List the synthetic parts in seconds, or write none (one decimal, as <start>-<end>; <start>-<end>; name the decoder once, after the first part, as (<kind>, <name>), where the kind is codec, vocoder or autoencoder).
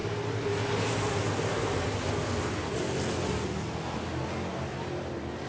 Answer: none